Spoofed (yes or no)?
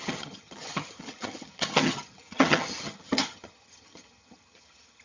yes